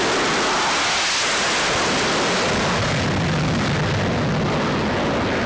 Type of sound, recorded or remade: recorded